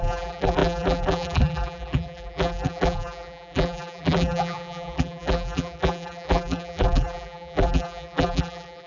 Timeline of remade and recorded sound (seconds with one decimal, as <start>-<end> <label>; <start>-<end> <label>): 0.0-8.9 remade